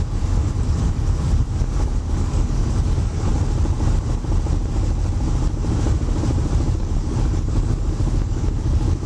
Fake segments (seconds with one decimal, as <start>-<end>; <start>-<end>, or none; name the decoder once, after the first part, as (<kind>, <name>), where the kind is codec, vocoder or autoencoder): 0.0-3.3 (codec, DAC); 6.8-9.1